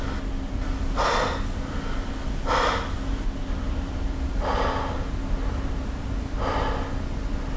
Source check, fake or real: real